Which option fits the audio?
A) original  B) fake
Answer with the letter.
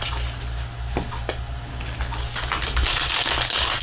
A